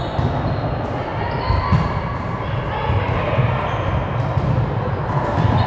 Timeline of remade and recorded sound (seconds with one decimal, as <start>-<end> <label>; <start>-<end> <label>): 0.0-5.7 recorded